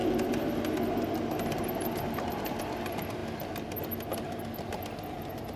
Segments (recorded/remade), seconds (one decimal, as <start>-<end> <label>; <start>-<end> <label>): 0.0-5.6 recorded